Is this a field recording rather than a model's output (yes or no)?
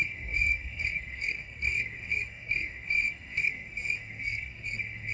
no